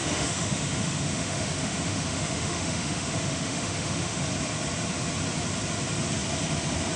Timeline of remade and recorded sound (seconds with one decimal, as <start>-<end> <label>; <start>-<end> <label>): 0.0-4.2 remade; 4.2-7.0 recorded